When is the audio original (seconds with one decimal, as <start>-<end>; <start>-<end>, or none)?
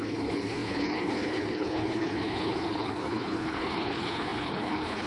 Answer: none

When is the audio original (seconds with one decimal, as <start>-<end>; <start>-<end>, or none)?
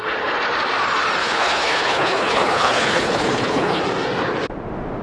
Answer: 0.0-1.2; 3.8-5.0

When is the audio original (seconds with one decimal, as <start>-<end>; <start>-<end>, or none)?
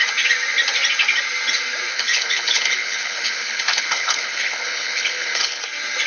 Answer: 0.0-1.9; 5.6-6.1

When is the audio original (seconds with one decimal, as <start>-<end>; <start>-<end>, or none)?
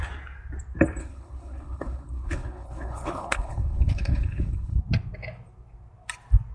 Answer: 0.0-1.0; 4.8-6.5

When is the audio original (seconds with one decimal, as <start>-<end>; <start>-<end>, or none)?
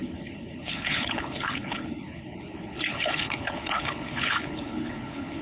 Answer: none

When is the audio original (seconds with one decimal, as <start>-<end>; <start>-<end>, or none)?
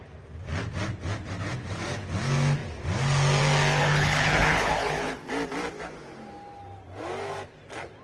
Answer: 0.0-3.8; 5.3-8.0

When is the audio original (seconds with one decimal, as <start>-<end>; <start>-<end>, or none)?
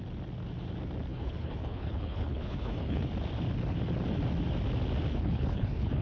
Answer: 0.0-1.1; 3.1-5.1